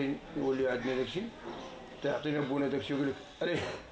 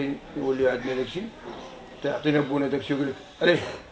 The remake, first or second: second